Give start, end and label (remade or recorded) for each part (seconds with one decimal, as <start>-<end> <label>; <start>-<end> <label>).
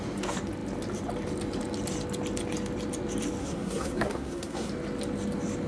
0.0-3.4 recorded; 3.4-4.7 remade; 4.7-5.7 recorded